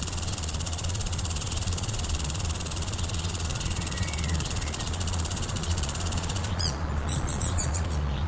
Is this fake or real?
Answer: fake